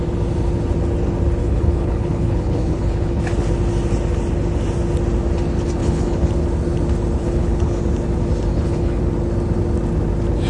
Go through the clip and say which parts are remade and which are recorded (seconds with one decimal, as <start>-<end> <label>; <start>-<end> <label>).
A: 0.0-1.4 recorded; 1.4-3.2 remade; 3.2-5.8 recorded; 5.8-6.3 remade; 6.3-7.2 recorded; 7.2-7.8 remade; 7.8-8.5 recorded; 8.5-9.0 remade; 9.0-10.5 recorded